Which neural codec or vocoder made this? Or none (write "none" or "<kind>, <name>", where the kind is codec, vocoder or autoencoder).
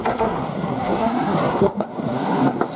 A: codec, SNAC